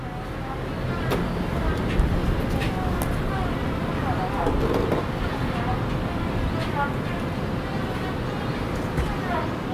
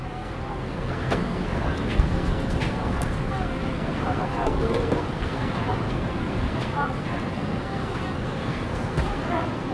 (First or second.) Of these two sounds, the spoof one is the second